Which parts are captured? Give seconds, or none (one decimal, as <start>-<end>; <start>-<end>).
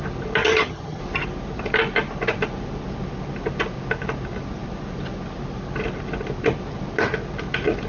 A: 0.0-0.4; 1.0-7.9